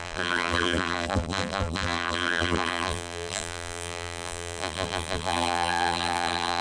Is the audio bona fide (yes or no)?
no